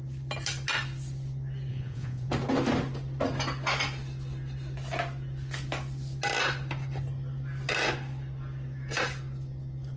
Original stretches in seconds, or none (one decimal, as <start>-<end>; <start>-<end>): 0.0-1.7; 2.3-10.0